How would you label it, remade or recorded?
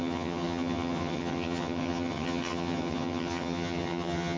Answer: remade